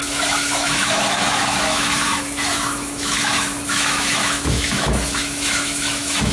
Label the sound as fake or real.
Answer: fake